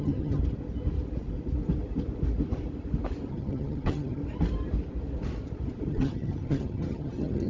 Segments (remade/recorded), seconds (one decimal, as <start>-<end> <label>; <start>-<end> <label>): 0.0-0.4 remade; 0.4-3.3 recorded; 3.3-4.2 remade; 4.2-5.9 recorded; 5.9-7.5 remade